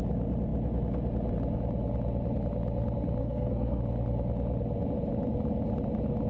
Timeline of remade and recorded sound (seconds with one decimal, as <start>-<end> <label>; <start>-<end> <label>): 0.0-3.2 recorded; 3.2-3.8 remade; 3.8-6.3 recorded